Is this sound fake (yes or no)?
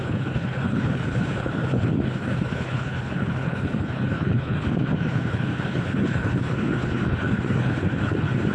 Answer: yes